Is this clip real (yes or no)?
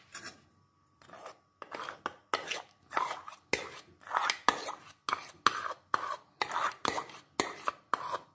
yes